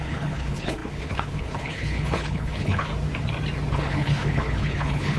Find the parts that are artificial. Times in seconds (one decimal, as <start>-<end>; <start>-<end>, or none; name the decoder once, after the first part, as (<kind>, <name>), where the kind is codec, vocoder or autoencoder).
0.0-2.9 (codec, HILCodec); 3.7-5.2